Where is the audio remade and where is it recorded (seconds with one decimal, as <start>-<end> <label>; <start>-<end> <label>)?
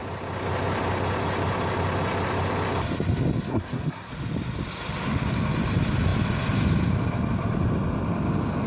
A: 0.0-3.5 recorded; 3.5-4.1 remade; 4.1-8.7 recorded